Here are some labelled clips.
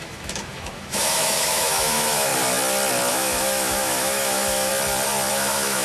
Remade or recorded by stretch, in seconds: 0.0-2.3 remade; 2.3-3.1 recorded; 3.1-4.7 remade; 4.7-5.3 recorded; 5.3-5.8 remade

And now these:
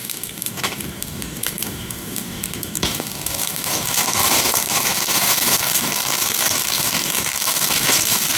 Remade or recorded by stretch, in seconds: 0.0-8.4 remade